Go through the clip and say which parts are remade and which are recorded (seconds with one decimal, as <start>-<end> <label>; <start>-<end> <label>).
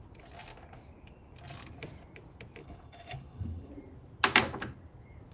0.0-2.6 recorded; 2.6-3.7 remade; 3.7-5.3 recorded